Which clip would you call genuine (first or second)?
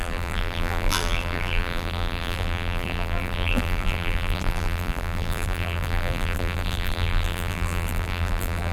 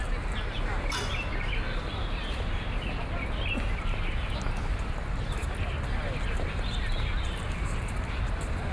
second